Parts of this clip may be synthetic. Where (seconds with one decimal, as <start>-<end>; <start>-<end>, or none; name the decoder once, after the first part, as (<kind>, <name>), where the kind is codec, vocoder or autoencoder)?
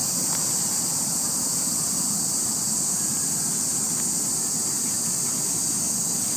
none